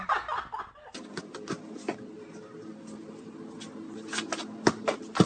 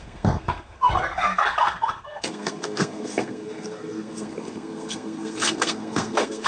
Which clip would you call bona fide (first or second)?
first